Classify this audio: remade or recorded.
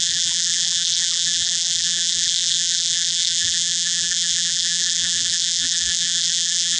remade